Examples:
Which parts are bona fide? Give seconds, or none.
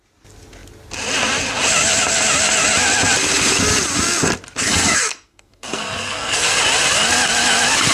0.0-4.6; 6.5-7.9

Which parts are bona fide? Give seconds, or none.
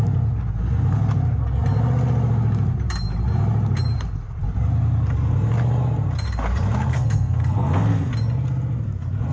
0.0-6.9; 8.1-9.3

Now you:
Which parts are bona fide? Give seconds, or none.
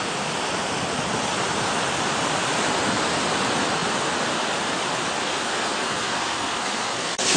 0.0-5.2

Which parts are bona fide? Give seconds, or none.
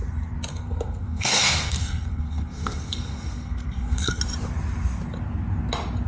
0.0-0.5; 4.2-6.1